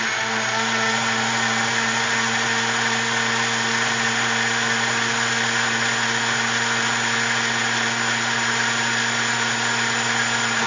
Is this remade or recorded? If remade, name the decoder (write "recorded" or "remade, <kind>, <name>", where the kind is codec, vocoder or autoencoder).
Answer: recorded